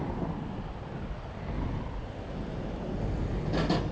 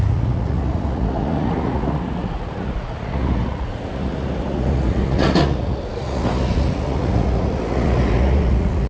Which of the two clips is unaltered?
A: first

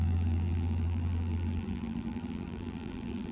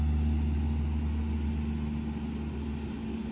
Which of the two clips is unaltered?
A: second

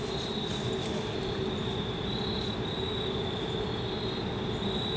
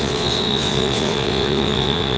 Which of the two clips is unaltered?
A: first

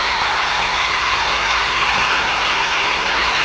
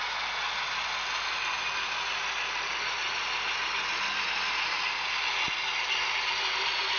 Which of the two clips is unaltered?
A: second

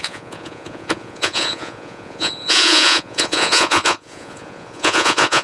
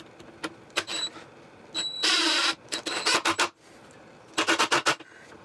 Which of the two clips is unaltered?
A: second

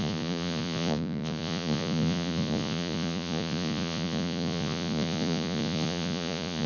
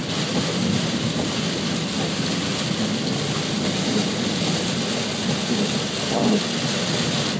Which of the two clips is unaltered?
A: second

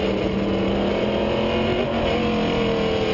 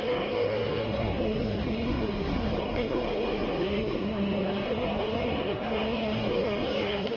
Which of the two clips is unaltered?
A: first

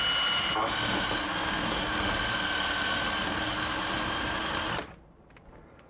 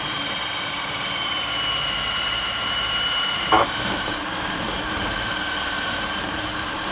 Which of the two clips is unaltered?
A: first